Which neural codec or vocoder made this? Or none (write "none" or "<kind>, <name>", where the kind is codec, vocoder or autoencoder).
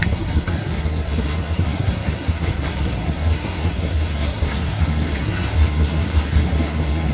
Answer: codec, SNAC